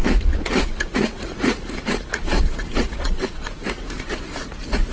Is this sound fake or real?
fake